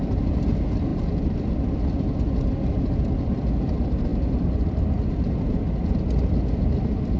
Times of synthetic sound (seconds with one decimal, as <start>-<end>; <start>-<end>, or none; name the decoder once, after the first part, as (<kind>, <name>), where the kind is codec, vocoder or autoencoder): none